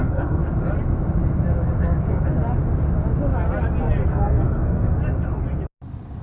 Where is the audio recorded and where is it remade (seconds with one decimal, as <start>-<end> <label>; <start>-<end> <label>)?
0.0-0.4 remade; 0.4-4.1 recorded; 4.1-5.0 remade; 5.0-6.2 recorded